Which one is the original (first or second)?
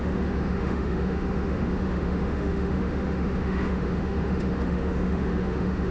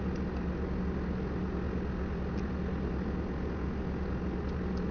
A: second